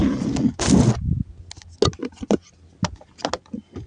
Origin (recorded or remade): recorded